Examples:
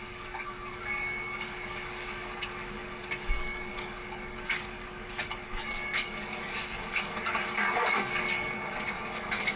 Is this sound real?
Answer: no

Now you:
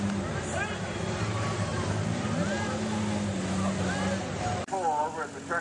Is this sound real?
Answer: yes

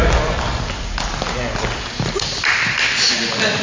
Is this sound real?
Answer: yes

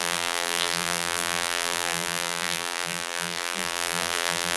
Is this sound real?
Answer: no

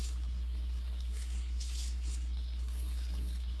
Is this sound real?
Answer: no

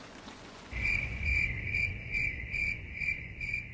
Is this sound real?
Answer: no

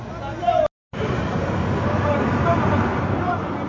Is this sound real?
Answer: yes